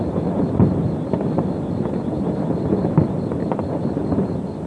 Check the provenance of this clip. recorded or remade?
recorded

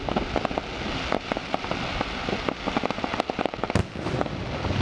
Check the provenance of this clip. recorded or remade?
recorded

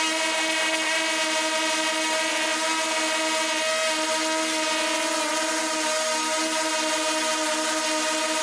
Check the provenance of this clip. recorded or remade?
recorded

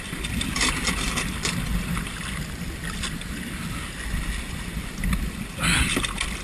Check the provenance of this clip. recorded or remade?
recorded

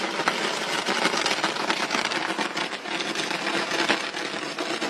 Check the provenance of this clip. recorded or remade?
recorded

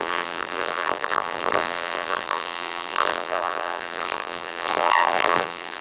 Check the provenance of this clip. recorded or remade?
remade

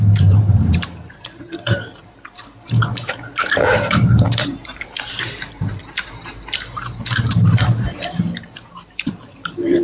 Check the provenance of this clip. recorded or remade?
remade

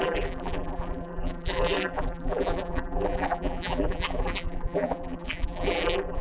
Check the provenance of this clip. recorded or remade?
remade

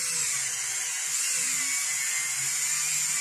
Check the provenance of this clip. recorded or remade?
recorded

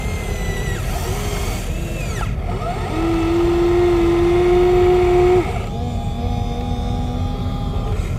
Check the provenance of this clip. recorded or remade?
recorded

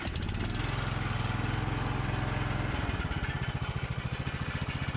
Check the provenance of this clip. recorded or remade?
recorded